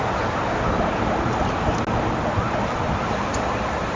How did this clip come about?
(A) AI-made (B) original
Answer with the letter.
B